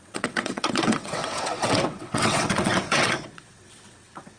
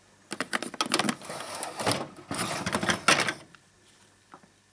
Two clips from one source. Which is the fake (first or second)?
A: first